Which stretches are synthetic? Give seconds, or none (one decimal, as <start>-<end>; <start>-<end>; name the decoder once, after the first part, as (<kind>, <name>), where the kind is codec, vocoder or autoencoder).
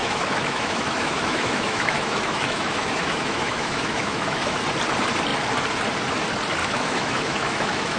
0.0-4.6 (autoencoder, DAC-VAE); 6.6-8.0